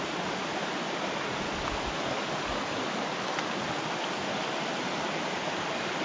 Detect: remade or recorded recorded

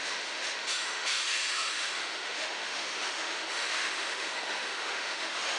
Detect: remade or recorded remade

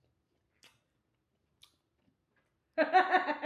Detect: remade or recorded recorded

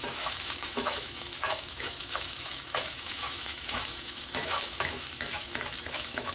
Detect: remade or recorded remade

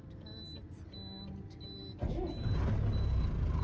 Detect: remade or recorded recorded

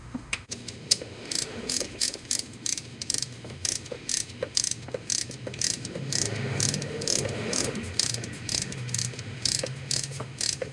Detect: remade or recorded remade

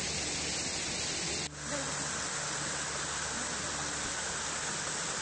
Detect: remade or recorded recorded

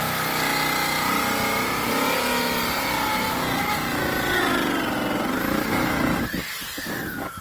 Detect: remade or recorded recorded